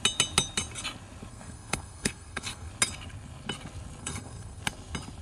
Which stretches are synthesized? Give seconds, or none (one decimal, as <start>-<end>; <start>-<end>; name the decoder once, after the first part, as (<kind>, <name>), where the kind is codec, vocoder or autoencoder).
1.3-2.7 (codec, SNAC); 4.0-4.6